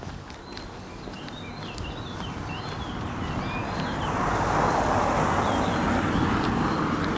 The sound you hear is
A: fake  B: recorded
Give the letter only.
B